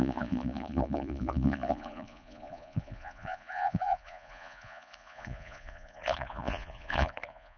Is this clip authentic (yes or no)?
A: no